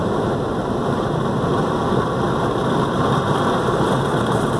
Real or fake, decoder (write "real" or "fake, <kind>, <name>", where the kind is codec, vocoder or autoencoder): fake, vocoder, BigVGAN v2